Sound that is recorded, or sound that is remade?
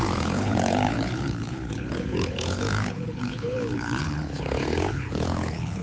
remade